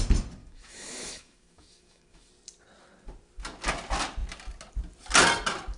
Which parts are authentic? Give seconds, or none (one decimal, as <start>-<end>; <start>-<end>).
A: 0.0-0.4; 2.3-5.8